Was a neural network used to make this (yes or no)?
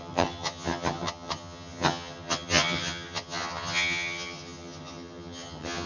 yes